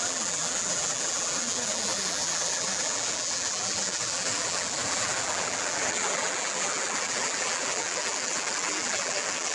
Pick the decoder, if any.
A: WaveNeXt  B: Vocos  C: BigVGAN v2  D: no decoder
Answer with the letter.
C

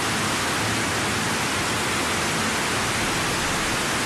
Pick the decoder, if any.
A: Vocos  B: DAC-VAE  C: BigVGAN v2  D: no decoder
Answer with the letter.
D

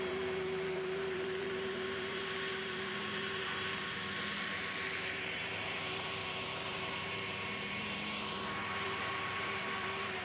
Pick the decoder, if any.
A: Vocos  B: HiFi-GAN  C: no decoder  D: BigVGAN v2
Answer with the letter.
D